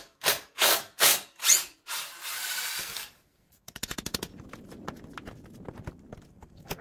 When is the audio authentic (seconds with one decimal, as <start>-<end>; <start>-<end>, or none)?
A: 1.4-2.8; 4.3-6.3